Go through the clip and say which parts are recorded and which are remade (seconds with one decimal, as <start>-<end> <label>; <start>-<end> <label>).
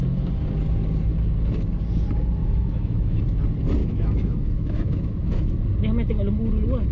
0.0-2.4 recorded; 2.4-3.2 remade; 3.2-3.8 recorded; 3.8-5.6 remade; 5.6-6.9 recorded